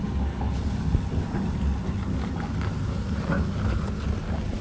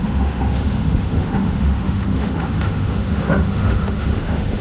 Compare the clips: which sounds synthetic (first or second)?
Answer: second